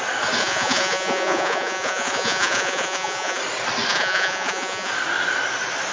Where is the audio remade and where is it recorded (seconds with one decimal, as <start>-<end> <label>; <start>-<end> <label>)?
0.0-0.4 recorded; 0.4-3.4 remade; 3.4-3.9 recorded; 3.9-4.9 remade; 4.9-5.9 recorded